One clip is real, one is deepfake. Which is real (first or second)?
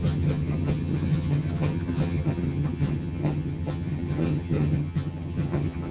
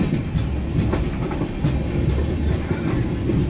second